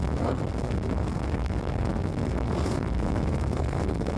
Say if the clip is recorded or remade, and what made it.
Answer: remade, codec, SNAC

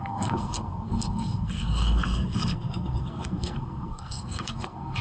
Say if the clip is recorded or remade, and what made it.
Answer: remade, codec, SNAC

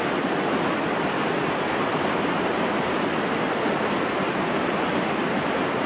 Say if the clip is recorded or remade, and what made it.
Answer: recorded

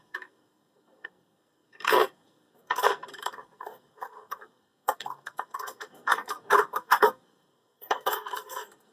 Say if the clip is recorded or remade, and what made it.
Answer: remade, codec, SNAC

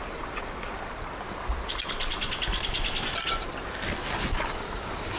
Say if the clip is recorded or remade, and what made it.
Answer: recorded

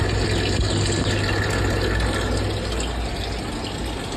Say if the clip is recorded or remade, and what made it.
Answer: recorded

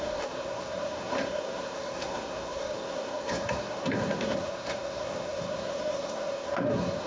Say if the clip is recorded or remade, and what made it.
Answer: remade, codec, SNAC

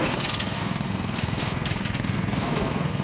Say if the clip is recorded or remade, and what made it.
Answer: remade, codec, SNAC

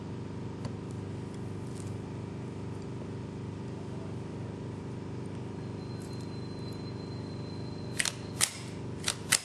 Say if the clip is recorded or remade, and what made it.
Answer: recorded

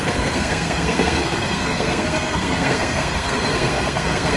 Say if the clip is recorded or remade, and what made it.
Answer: remade, codec, SNAC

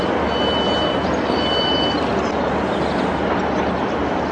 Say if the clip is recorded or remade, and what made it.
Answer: recorded